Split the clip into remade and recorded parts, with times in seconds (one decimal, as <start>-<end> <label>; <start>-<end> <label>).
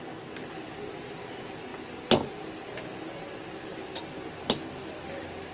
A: 0.0-5.5 recorded